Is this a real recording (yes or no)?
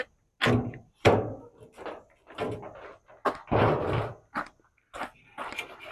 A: yes